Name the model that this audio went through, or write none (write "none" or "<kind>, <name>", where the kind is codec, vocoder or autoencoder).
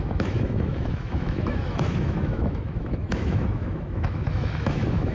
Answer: autoencoder, DAC-VAE